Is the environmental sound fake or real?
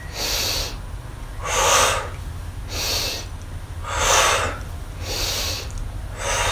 real